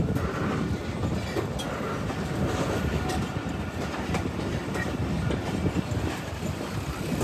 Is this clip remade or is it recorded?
recorded